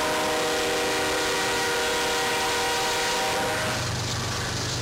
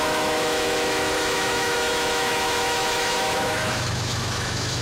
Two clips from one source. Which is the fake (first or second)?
second